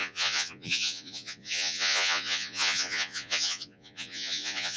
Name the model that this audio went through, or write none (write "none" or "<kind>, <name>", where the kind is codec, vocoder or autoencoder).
vocoder, Vocos